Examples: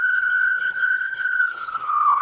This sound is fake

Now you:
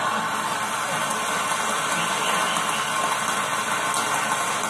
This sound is real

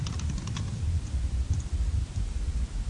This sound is real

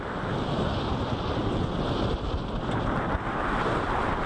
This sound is real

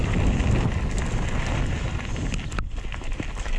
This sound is real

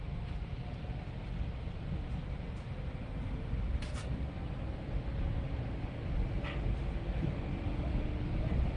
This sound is real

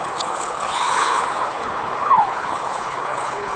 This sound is fake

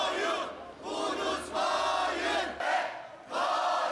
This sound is real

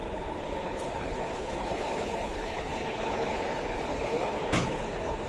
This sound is fake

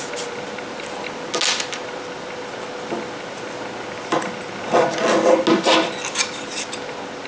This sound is real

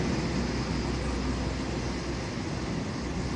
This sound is real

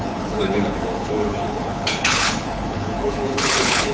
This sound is fake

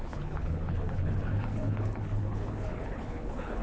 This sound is fake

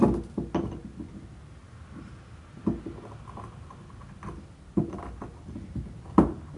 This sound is real